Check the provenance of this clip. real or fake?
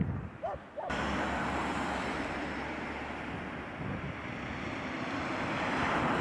fake